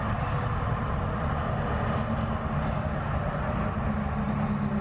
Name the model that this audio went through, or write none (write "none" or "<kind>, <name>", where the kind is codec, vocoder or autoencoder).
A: none